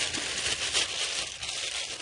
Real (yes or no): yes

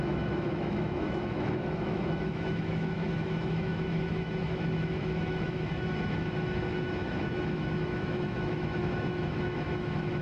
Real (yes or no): no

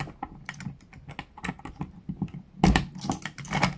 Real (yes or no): yes